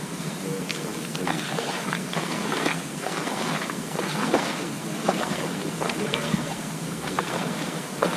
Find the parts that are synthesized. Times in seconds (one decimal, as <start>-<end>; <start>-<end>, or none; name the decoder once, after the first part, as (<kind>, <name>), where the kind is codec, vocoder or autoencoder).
0.0-8.2 (codec, SNAC)